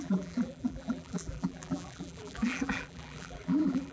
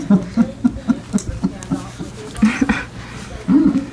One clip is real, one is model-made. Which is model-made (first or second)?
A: first